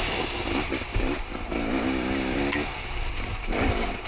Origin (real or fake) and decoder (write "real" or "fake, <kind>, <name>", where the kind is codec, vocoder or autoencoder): real